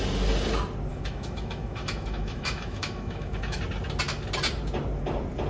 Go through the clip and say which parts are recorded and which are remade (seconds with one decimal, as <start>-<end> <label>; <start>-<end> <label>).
0.0-0.9 recorded; 0.9-3.6 remade; 3.6-5.5 recorded